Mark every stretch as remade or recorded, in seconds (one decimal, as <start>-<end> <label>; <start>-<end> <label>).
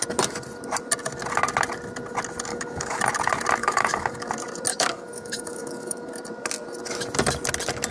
0.0-2.5 recorded; 2.5-3.0 remade; 3.0-3.6 recorded; 3.6-4.3 remade; 4.3-4.7 recorded; 4.7-6.1 remade; 6.1-7.9 recorded